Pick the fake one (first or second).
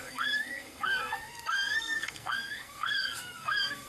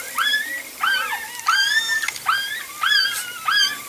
first